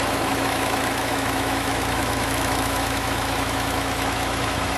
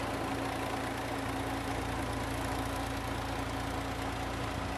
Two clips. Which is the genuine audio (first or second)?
second